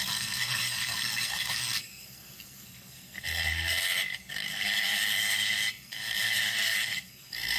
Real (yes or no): no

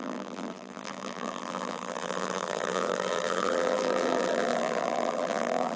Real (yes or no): no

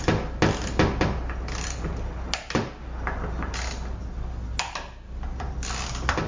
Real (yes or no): yes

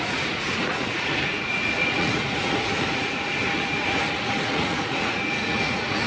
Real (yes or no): no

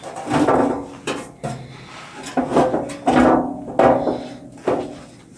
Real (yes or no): yes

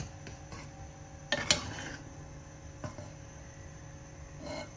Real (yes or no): yes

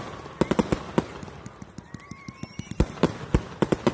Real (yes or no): yes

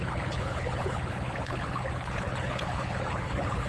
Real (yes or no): no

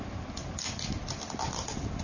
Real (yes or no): yes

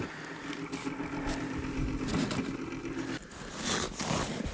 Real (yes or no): yes